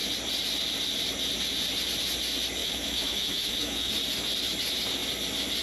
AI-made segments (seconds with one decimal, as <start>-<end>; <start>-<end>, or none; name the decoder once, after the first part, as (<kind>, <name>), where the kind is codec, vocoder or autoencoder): 2.6-3.9 (autoencoder, DAC-VAE)